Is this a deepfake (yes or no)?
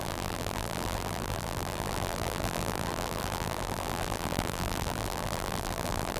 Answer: yes